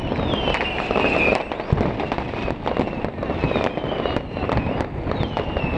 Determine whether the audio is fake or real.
real